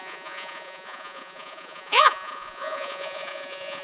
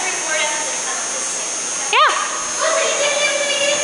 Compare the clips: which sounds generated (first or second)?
first